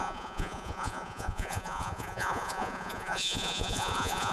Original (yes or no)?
no